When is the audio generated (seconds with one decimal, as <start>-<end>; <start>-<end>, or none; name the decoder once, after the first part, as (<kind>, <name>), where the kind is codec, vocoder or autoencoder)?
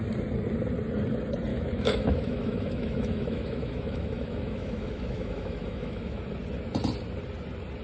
1.5-6.2 (autoencoder, DAC-VAE)